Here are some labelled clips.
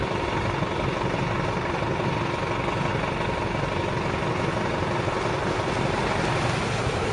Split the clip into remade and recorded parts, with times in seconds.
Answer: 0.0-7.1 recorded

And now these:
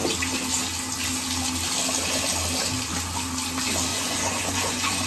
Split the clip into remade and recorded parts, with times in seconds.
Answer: 0.0-3.9 recorded; 3.9-5.1 remade

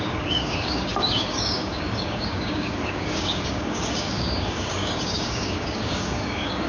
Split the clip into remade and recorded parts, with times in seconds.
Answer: 0.0-6.7 remade

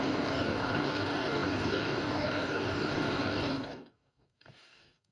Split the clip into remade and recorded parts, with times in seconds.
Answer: 0.0-5.1 remade

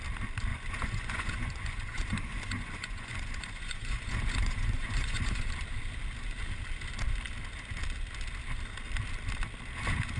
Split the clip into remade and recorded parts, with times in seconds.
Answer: 0.0-0.5 recorded; 0.5-5.5 remade; 5.5-10.2 recorded

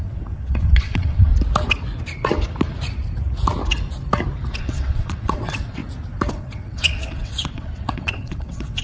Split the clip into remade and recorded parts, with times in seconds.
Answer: 0.0-1.3 remade; 1.3-4.6 recorded; 4.6-5.8 remade; 5.8-6.3 recorded; 6.3-8.8 remade

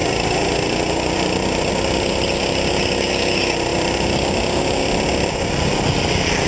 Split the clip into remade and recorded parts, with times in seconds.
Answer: 0.0-6.5 recorded